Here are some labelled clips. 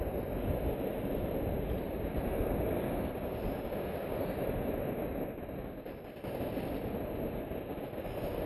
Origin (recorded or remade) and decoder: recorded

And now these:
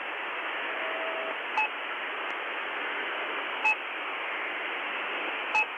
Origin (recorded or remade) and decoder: recorded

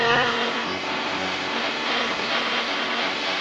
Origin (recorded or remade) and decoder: remade, codec, SNAC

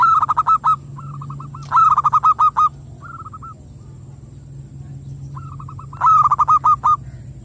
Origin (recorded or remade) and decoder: recorded